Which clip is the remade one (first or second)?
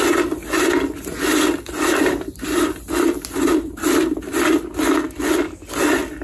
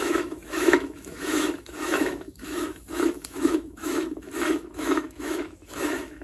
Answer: second